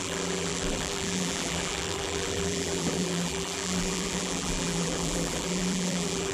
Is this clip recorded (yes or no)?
no